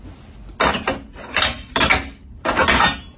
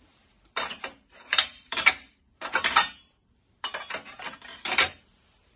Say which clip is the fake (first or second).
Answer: second